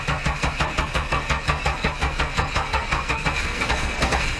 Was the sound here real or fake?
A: fake